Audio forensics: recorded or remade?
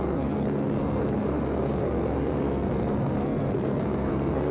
remade